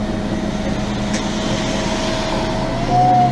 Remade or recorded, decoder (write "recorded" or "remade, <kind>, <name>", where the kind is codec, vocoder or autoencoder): recorded